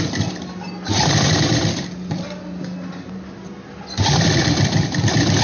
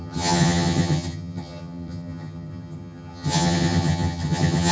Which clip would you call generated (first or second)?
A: second